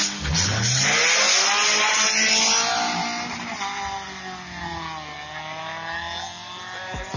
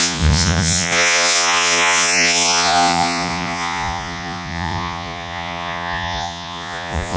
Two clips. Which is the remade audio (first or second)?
second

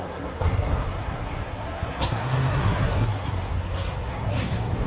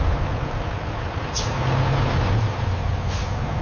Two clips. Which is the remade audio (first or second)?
first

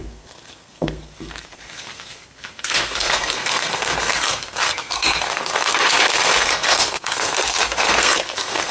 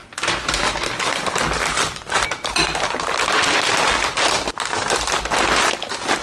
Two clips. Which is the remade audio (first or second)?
first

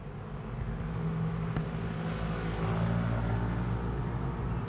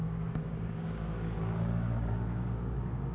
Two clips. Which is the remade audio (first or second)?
second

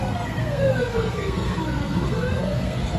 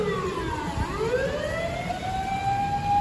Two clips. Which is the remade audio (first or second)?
first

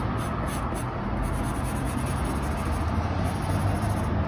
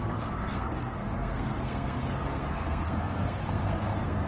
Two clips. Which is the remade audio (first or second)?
second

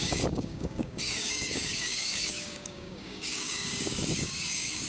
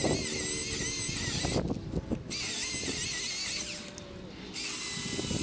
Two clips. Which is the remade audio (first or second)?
first